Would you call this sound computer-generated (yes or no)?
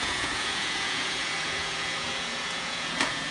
yes